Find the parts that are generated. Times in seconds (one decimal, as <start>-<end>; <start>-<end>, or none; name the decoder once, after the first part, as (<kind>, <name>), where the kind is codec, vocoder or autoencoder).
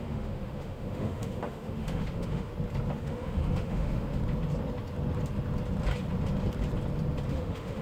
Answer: 0.0-2.5 (autoencoder, DAC-VAE); 3.0-4.2; 7.3-7.8